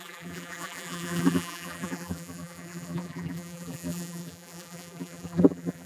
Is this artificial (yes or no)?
yes